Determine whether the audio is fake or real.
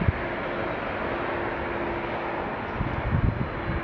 real